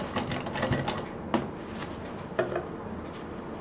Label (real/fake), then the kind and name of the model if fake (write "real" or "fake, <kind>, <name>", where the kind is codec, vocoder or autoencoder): real